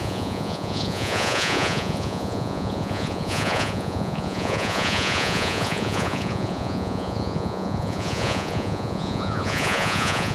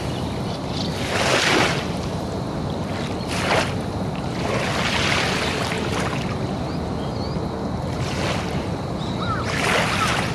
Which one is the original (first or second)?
second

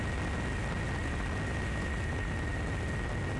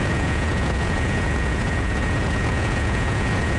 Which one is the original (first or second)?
first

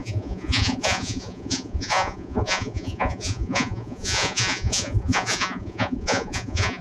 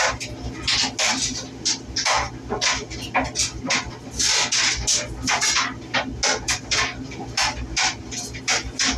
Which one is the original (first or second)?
second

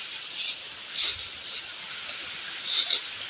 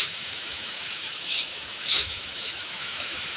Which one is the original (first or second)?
first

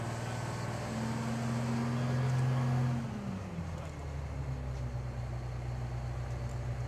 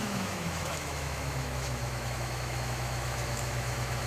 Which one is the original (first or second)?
first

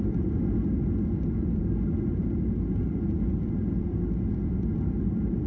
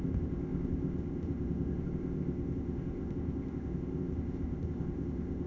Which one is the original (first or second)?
first